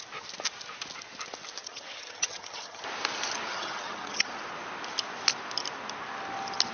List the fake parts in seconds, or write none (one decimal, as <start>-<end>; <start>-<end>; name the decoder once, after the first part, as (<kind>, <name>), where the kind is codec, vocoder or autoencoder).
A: 1.6-2.8 (vocoder, HiFi-GAN); 3.5-4.3